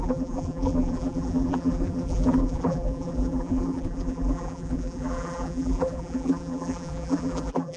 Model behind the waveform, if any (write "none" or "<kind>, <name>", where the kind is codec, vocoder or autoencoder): vocoder, BigVGAN v2